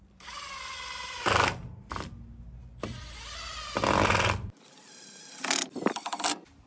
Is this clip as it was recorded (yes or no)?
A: yes